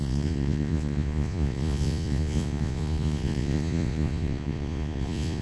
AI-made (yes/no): yes